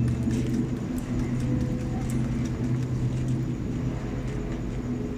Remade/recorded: recorded